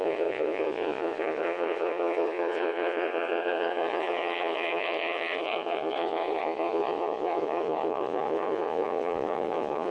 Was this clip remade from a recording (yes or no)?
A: yes